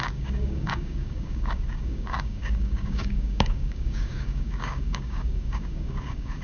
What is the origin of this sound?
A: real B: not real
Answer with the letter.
B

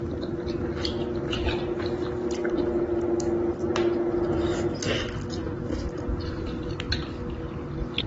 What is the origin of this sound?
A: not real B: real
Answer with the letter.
B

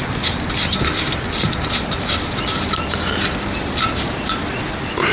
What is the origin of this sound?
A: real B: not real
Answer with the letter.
A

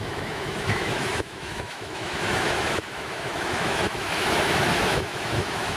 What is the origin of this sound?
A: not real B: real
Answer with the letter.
A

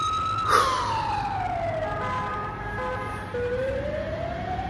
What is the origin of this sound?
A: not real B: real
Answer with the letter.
B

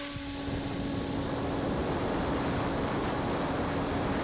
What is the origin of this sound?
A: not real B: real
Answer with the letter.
B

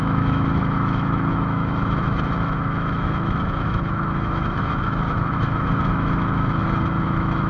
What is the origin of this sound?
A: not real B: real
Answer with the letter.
A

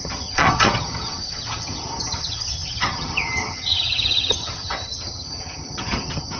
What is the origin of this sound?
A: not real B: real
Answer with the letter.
A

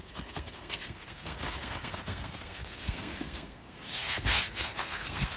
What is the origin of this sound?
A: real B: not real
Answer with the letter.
B